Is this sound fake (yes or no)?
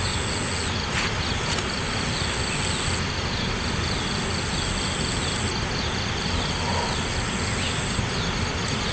no